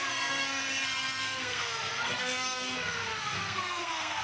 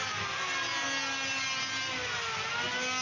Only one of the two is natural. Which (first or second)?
second